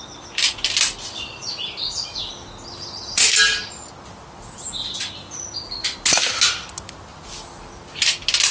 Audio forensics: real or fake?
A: real